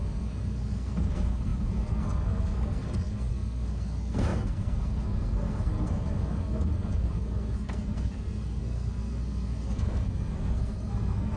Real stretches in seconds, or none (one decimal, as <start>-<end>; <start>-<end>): none